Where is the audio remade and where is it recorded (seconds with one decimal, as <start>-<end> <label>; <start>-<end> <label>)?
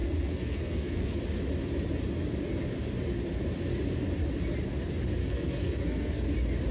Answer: 0.0-1.2 remade; 1.2-5.2 recorded; 5.2-6.3 remade; 6.3-6.7 recorded